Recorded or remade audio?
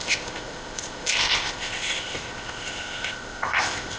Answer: remade